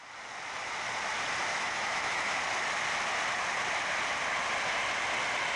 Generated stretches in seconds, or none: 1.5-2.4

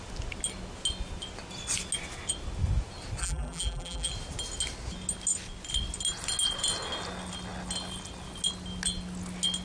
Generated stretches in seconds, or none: 3.2-4.1

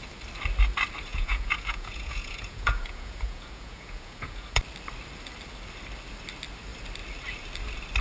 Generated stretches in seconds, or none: 1.1-4.6

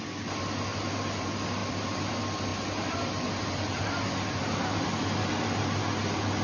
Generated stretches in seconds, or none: 1.6-2.1

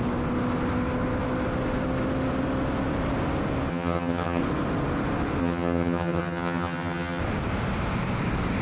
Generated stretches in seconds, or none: 3.7-4.4; 5.4-7.2

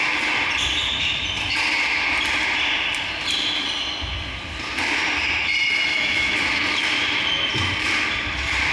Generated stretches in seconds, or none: 5.9-6.6

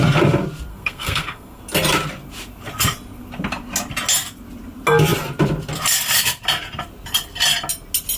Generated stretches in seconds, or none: 0.7-1.6

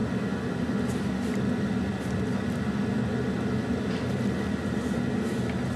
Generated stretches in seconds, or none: none